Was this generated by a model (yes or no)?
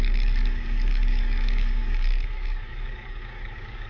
yes